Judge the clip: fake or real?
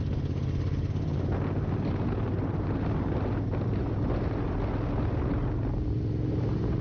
real